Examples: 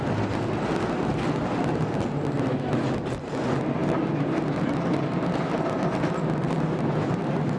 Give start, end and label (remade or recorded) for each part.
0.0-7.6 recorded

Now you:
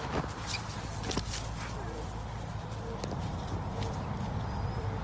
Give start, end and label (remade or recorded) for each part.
0.0-0.9 remade; 0.9-3.9 recorded; 3.9-5.0 remade